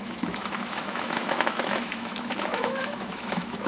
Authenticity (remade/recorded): remade